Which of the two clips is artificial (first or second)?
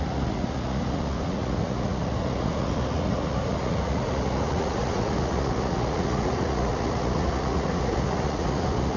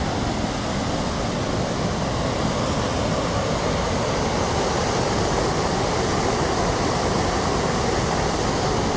first